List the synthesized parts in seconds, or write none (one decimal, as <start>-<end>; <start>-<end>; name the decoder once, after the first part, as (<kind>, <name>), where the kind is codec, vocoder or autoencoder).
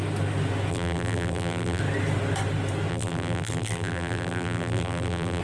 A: 0.7-1.8 (vocoder, BigVGAN v2); 2.9-5.4